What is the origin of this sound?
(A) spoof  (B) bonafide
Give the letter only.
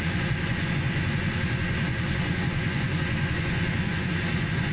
A